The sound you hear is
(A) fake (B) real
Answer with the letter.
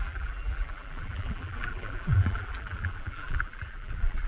A